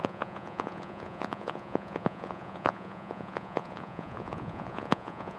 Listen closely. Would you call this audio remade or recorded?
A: remade